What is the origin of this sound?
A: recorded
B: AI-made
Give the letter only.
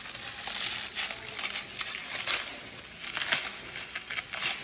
A